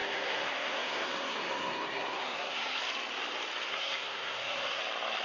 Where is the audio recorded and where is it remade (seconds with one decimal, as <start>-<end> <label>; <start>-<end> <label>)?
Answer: 0.0-2.8 remade; 2.8-3.7 recorded; 3.7-4.8 remade; 4.8-5.2 recorded